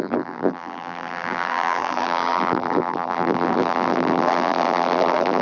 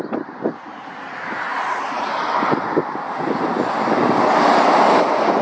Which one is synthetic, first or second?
first